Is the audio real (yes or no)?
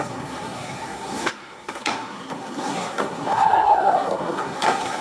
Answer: no